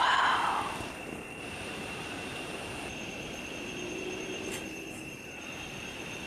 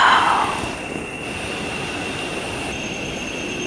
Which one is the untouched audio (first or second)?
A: second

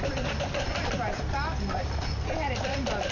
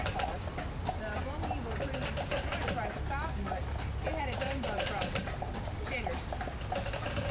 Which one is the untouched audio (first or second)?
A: second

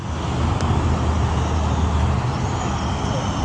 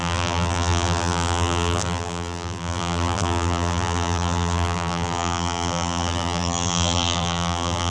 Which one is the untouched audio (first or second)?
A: first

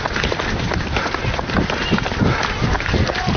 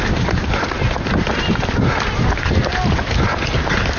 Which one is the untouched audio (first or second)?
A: second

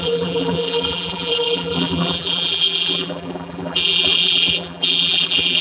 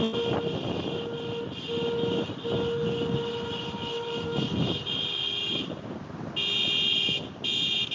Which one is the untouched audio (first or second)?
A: second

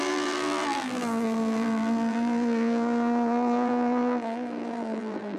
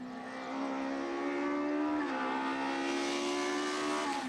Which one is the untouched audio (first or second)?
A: second